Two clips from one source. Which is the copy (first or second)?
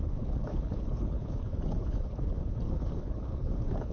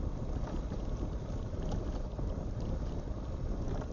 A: first